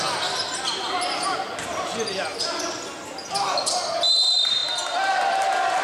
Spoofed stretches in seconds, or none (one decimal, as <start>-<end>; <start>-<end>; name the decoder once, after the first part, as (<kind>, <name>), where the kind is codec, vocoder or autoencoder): none